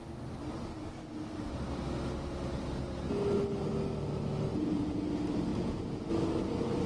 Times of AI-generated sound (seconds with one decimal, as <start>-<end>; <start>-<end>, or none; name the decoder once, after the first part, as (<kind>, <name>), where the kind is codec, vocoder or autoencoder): 4.5-5.1 (vocoder, Vocos); 5.5-6.1